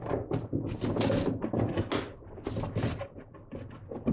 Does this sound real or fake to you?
real